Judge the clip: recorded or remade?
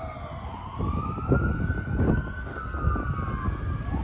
recorded